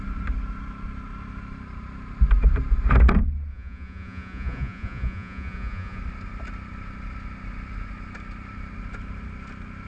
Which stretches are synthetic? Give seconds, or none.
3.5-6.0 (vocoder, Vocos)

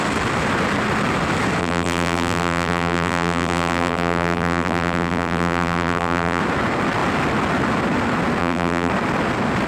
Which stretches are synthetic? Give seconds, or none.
1.6-6.4 (vocoder, BigVGAN v2); 8.4-8.9

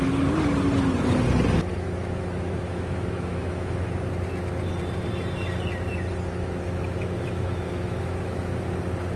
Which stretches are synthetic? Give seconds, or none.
1.7-3.9 (autoencoder, DAC-VAE); 6.3-8.5

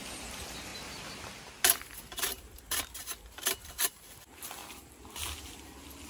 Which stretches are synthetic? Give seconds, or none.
0.0-0.7 (vocoder, BigVGAN v2); 1.8-4.6

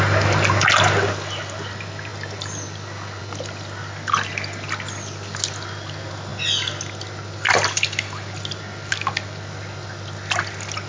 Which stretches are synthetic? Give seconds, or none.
none

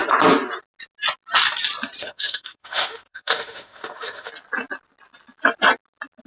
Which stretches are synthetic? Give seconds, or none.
2.0-4.3 (autoencoder, DAC-VAE)

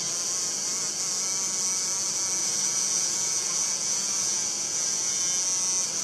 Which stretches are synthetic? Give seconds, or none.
2.4-5.2 (vocoder, Vocos)

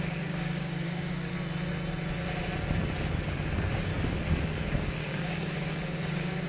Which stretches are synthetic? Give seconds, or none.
0.0-1.3 (codec, DAC); 3.3-3.9; 4.4-6.5